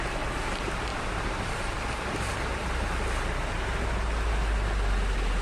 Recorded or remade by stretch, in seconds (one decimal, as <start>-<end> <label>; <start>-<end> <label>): 0.0-0.9 recorded; 0.9-2.1 remade; 2.1-5.4 recorded